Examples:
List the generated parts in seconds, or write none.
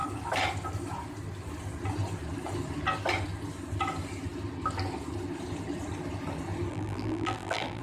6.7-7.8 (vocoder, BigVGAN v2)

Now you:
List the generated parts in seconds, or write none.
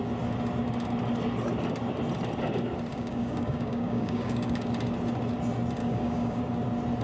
2.9-4.7 (codec, DAC); 5.8-6.4